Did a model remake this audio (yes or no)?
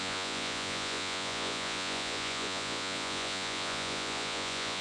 yes